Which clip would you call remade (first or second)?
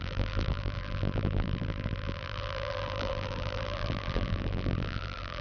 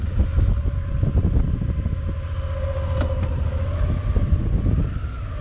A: first